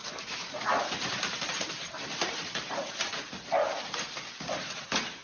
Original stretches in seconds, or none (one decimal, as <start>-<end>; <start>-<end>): 3.1-5.2